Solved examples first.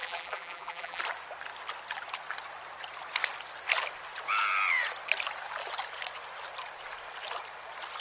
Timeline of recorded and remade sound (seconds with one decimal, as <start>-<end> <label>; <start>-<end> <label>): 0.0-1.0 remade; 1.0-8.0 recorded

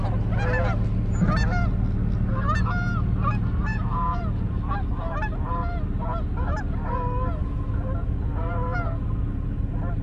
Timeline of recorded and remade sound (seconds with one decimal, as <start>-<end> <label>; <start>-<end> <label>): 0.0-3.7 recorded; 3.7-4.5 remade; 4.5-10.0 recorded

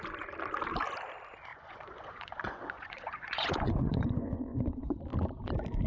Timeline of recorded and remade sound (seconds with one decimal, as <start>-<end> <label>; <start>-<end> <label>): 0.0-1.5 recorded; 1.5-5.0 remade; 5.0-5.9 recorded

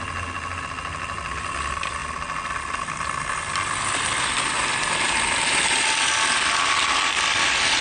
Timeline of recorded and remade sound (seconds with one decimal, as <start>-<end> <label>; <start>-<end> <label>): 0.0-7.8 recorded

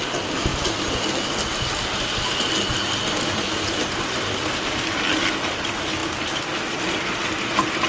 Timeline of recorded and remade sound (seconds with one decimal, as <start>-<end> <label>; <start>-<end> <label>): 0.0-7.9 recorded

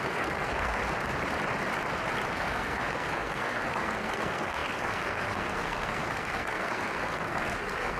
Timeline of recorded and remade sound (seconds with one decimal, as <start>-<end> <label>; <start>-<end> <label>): 0.0-0.8 remade; 0.8-2.3 recorded; 2.3-8.0 remade